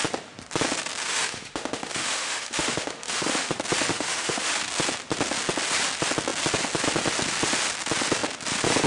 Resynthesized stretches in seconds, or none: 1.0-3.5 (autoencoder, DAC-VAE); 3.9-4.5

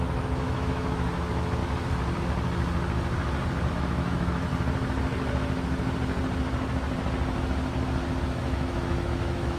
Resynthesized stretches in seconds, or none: 0.0-1.6 (autoencoder, DAC-VAE); 3.7-4.5; 8.2-9.6